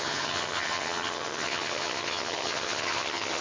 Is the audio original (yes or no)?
no